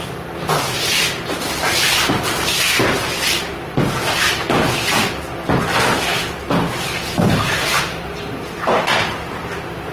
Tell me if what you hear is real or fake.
real